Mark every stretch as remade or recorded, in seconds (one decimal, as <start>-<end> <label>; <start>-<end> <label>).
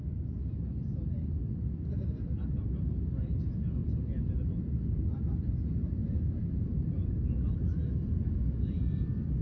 0.0-3.8 recorded; 3.8-4.5 remade; 4.5-6.0 recorded; 6.0-7.1 remade; 7.1-9.4 recorded